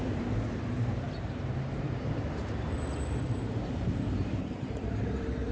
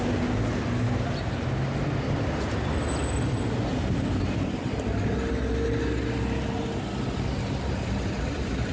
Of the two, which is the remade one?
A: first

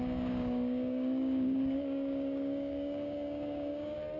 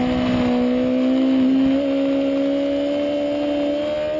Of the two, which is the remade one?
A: first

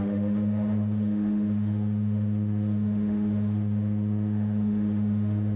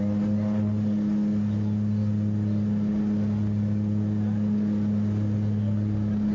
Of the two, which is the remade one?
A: first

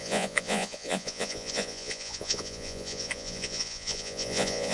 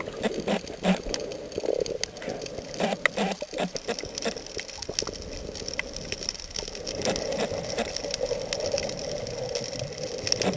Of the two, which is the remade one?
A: first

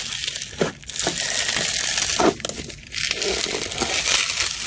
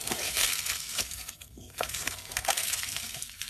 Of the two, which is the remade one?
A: second